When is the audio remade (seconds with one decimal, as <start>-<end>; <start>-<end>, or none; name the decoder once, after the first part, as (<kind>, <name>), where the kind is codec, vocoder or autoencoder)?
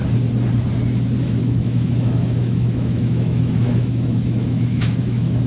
1.2-5.5 (autoencoder, DAC-VAE)